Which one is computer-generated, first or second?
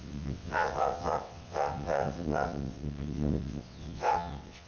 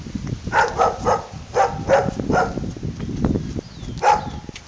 first